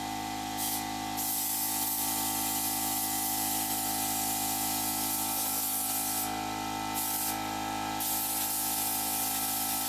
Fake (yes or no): no